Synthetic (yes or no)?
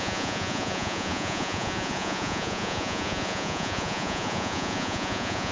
yes